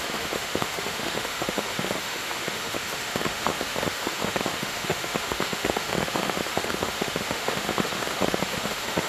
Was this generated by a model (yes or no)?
yes